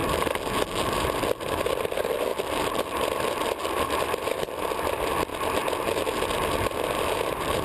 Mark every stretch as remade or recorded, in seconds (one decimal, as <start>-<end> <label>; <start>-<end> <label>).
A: 0.0-1.6 recorded; 1.6-5.3 remade; 5.3-7.1 recorded; 7.1-7.6 remade